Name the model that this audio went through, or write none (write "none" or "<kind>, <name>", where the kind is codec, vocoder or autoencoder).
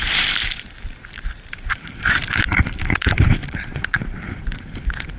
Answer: vocoder, BigVGAN v2